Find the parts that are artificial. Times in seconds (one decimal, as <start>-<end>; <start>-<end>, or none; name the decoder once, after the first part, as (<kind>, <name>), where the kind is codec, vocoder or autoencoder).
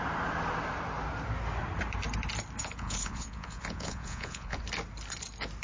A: 2.6-4.6 (vocoder, Vocos)